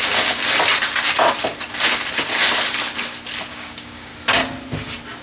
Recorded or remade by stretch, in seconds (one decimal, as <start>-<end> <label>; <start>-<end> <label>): 0.0-0.4 remade; 0.4-3.5 recorded; 3.5-4.1 remade; 4.1-5.2 recorded